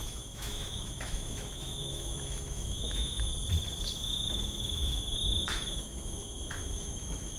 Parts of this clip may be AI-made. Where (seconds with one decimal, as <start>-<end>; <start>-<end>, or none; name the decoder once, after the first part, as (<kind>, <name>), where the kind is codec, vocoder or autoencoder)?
0.0-3.3 (autoencoder, DAC-VAE); 3.8-7.4